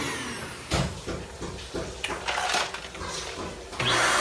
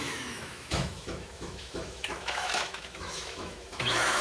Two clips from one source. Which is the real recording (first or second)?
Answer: first